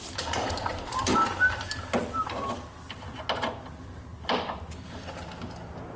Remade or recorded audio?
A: recorded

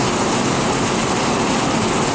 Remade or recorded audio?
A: recorded